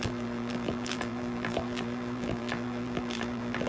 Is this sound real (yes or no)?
no